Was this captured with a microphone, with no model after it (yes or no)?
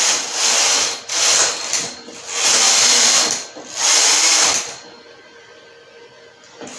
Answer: yes